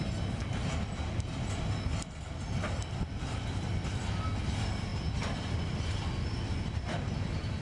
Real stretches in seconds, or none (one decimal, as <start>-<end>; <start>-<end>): 0.0-1.9; 3.9-7.6